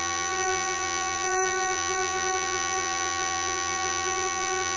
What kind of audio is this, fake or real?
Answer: fake